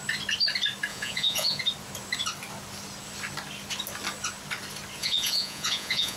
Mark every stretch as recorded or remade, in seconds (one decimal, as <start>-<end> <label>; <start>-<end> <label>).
0.0-0.9 recorded; 0.9-1.6 remade; 1.6-5.0 recorded; 5.0-6.2 remade